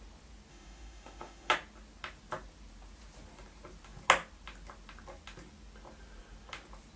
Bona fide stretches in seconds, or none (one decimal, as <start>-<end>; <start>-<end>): 0.0-0.5; 1.5-7.0